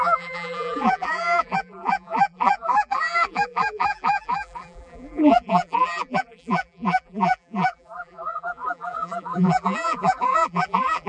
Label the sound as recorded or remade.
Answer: remade